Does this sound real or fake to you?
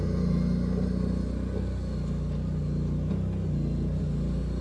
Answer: real